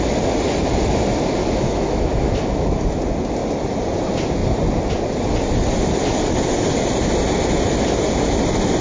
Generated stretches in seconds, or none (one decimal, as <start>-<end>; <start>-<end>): 1.4-3.0